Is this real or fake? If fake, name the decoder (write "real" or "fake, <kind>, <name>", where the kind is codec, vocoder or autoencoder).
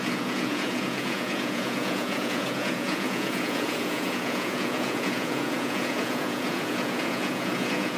fake, vocoder, Vocos